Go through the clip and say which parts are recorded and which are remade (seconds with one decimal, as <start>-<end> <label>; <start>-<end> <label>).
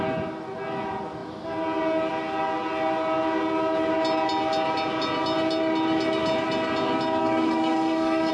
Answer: 0.0-7.2 recorded; 7.2-8.3 remade